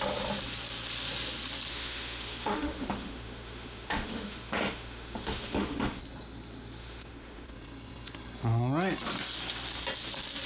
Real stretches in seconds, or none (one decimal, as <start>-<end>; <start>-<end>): 0.0-1.7; 6.0-6.8; 7.5-10.5

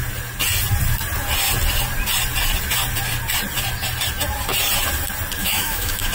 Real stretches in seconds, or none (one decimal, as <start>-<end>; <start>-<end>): 0.0-5.4

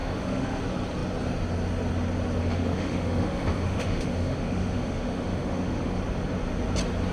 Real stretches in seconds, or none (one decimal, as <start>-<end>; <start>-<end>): 0.6-2.4; 6.0-7.1

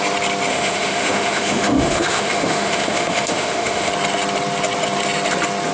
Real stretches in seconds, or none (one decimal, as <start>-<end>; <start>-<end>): 0.0-0.5; 3.9-5.7

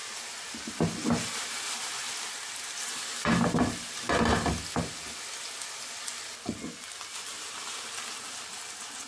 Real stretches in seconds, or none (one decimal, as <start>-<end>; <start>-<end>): 0.0-9.1

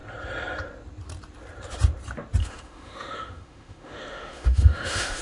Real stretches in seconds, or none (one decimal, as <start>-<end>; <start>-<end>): 0.0-2.4

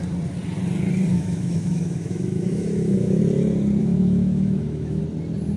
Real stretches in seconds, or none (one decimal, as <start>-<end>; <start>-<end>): 0.0-1.1; 3.2-3.8; 5.0-5.6